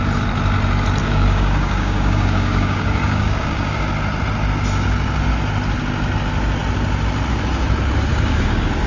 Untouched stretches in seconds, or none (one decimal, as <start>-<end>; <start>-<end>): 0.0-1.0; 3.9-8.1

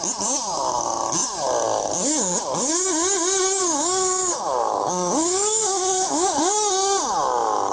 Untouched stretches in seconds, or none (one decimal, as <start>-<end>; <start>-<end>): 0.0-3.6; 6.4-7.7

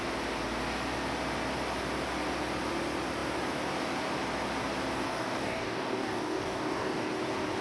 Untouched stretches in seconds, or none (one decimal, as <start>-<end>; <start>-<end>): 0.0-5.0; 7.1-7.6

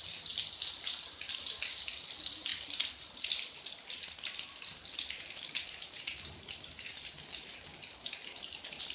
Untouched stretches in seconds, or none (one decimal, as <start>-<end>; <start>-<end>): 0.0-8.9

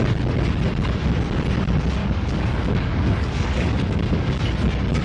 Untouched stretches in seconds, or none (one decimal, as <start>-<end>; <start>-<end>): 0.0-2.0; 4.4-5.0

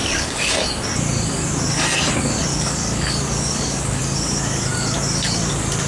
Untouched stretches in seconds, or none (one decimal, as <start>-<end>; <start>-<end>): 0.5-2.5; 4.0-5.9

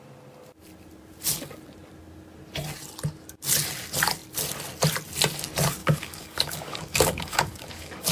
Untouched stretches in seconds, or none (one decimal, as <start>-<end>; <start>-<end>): 0.0-5.8

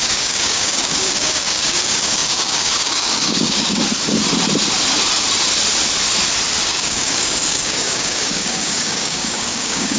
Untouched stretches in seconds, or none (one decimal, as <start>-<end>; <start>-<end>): 3.8-6.7